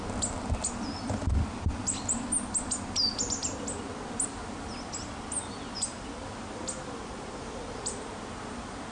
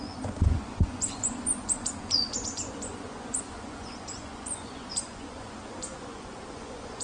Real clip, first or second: first